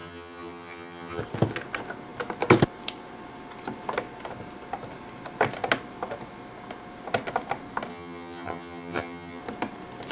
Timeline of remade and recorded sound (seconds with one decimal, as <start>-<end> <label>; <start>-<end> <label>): 0.0-1.2 remade; 1.2-7.9 recorded; 7.9-9.4 remade; 9.4-10.1 recorded

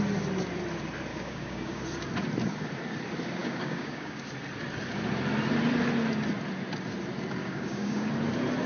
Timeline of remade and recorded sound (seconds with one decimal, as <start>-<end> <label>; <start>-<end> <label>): 0.0-1.1 recorded; 1.1-1.8 remade; 1.8-3.4 recorded; 3.4-4.2 remade; 4.2-7.4 recorded; 7.4-8.1 remade; 8.1-8.7 recorded

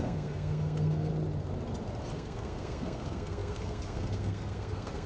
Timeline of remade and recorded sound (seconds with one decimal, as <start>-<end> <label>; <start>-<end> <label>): 0.0-1.1 remade; 1.1-2.1 recorded; 2.1-5.1 remade

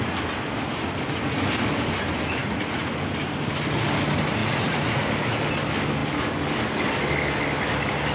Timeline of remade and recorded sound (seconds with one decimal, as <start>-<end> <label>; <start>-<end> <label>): 0.0-2.4 recorded; 2.4-2.9 remade; 2.9-4.4 recorded; 4.4-5.0 remade; 5.0-8.1 recorded